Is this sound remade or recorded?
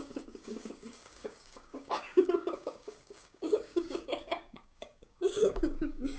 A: remade